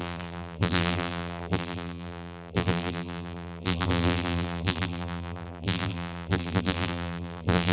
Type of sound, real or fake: fake